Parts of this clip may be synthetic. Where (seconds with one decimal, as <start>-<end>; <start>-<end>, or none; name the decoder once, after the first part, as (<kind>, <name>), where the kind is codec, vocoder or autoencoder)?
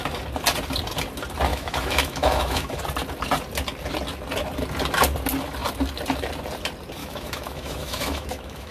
1.5-2.8 (autoencoder, DAC-VAE); 7.0-8.7